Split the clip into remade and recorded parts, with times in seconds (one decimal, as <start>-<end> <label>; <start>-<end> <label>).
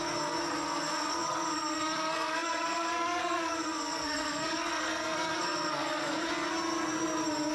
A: 0.0-6.3 remade; 6.3-7.5 recorded